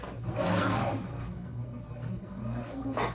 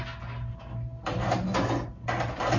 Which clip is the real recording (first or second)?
second